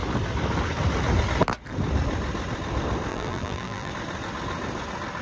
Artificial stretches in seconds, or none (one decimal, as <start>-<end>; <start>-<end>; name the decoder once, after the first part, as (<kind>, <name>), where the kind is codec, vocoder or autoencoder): 3.1-3.9 (vocoder, BigVGAN v2)